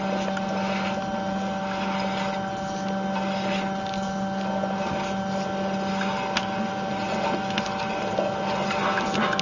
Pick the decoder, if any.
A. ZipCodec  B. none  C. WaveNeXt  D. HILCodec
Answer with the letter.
B